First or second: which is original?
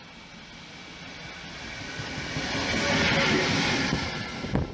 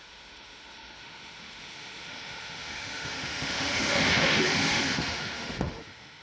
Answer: first